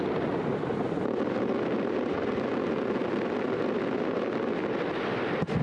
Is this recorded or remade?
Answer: recorded